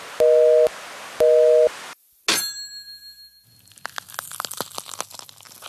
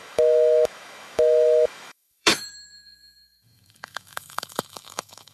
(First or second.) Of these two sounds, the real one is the first